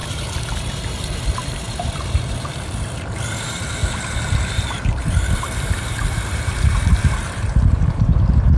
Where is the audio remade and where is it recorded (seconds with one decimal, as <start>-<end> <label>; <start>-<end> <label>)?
0.0-8.6 remade